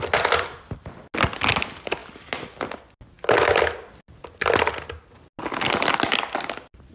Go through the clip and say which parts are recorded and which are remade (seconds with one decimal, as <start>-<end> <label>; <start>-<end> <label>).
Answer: 0.0-6.9 recorded